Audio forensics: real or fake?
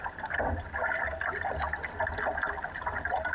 real